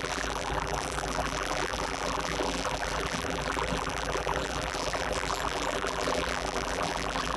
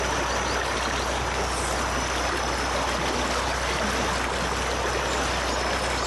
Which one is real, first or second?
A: second